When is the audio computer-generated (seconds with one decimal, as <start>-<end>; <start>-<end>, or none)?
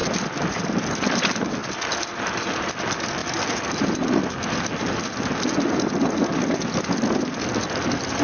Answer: none